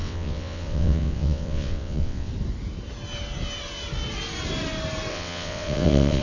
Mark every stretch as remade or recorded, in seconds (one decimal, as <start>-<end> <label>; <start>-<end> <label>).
0.0-2.3 remade; 2.3-5.1 recorded; 5.1-6.2 remade